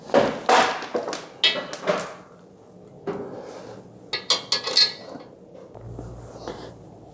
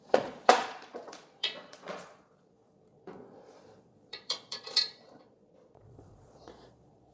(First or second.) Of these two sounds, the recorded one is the first